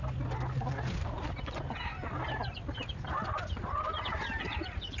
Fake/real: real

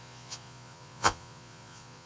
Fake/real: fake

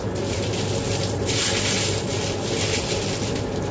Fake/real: real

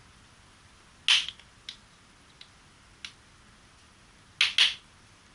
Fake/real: real